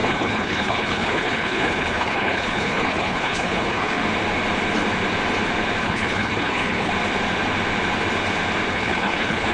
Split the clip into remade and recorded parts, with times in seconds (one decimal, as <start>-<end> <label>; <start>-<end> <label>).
0.0-4.0 remade; 4.0-5.8 recorded; 5.8-6.9 remade; 6.9-8.7 recorded; 8.7-9.5 remade